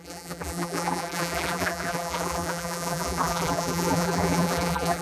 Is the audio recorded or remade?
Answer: remade